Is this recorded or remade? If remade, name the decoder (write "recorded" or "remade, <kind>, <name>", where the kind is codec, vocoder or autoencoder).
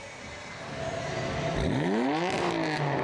recorded